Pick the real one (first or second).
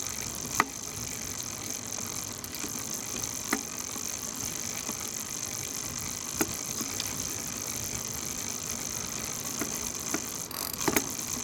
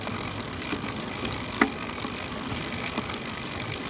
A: first